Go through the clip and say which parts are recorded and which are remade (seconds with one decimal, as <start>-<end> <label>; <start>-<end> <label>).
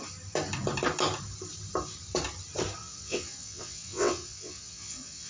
0.0-2.8 recorded; 2.8-5.3 remade